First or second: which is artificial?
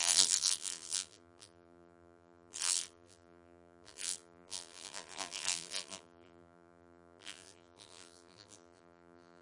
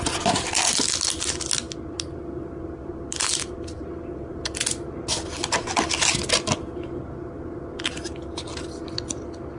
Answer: first